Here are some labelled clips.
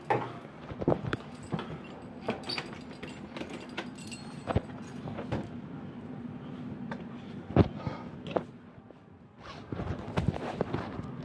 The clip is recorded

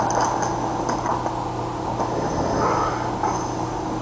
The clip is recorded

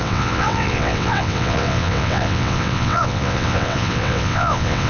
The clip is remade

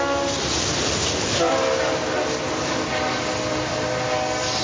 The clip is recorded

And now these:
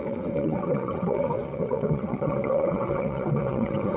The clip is remade